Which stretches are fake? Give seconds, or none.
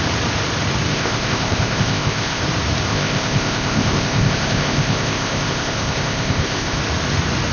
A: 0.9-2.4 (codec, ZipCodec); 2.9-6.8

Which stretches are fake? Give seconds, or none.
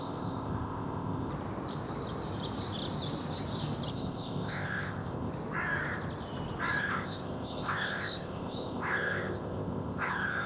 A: 0.0-1.3 (codec, ZipCodec); 3.9-5.3; 6.8-10.5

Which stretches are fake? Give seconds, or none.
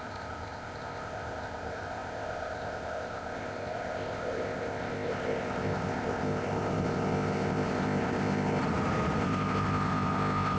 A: 0.0-8.6 (codec, ZipCodec); 9.2-10.6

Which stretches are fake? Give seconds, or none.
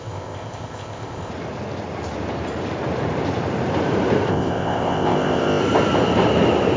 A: 0.0-1.3 (codec, ZipCodec); 4.3-5.6